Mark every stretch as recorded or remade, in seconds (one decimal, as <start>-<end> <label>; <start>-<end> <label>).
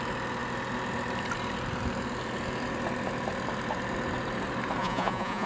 0.0-4.8 recorded; 4.8-5.5 remade